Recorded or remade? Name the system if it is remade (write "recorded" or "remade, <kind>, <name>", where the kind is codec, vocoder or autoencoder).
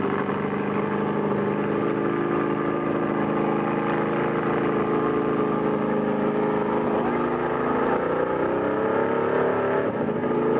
recorded